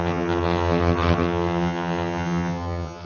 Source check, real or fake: fake